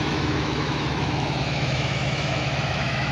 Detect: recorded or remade remade